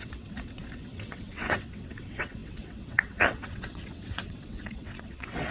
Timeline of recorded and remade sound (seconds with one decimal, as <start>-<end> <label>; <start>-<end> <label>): 0.0-5.5 remade